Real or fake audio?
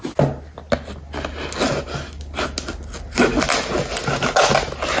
real